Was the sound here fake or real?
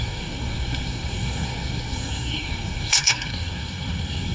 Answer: fake